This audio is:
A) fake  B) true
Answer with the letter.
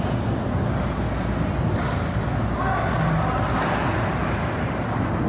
B